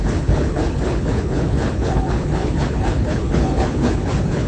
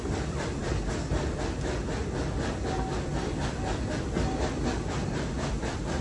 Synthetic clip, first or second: first